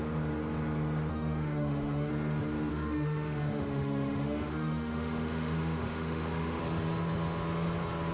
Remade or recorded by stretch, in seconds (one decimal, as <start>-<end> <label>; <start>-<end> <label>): 0.0-1.1 recorded; 1.1-2.1 remade; 2.1-2.7 recorded; 2.7-6.6 remade; 6.6-8.1 recorded